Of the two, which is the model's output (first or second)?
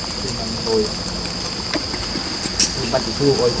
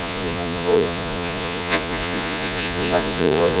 second